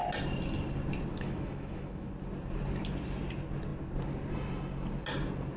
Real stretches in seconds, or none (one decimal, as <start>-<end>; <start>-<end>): 0.0-1.1; 2.1-5.6